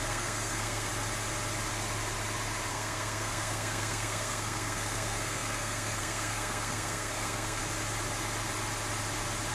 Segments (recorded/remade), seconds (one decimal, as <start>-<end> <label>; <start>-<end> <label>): 0.0-0.9 remade; 0.9-2.7 recorded; 2.7-7.6 remade; 7.6-9.5 recorded